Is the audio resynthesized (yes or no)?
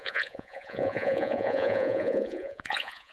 yes